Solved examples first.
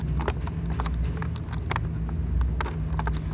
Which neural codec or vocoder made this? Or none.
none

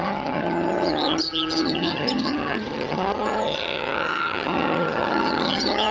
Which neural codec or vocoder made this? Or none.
vocoder, HiFi-GAN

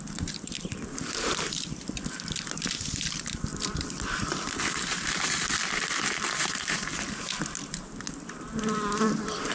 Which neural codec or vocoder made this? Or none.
vocoder, BigVGAN v2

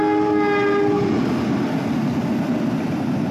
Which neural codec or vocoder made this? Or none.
none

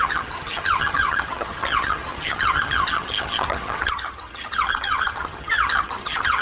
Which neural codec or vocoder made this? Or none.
vocoder, HiFi-GAN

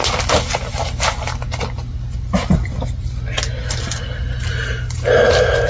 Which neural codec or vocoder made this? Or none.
none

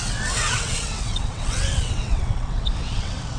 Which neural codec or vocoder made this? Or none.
vocoder, WaveNeXt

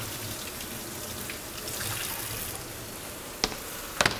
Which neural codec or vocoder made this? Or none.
none